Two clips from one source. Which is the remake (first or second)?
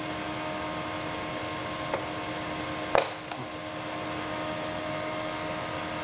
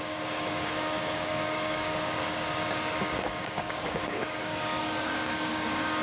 second